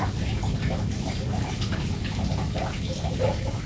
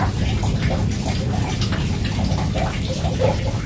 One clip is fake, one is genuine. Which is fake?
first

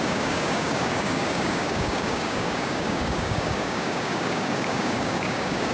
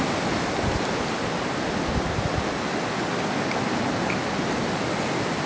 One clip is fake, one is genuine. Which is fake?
first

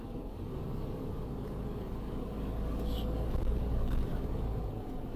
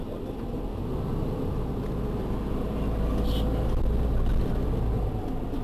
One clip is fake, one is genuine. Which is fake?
first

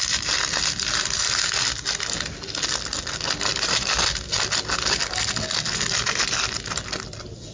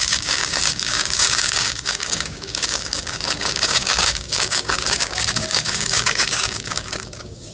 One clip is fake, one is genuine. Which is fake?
second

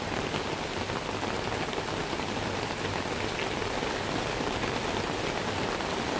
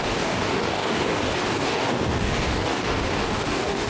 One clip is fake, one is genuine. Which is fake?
second